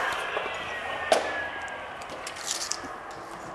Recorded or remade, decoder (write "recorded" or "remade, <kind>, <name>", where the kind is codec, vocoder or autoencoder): recorded